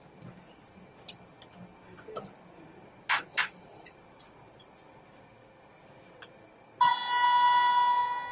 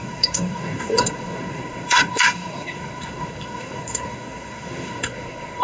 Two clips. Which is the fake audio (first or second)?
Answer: second